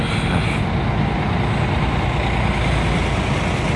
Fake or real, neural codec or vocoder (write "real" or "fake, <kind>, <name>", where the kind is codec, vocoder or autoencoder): real